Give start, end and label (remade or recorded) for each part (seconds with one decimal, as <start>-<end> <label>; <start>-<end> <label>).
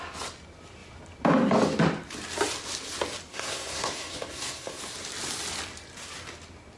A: 0.0-3.3 recorded; 3.3-4.8 remade; 4.8-6.8 recorded